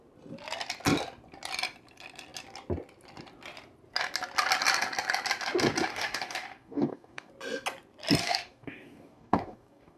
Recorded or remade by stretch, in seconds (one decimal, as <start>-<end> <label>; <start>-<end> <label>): 0.0-5.9 recorded; 5.9-7.3 remade; 7.3-8.2 recorded; 8.2-10.0 remade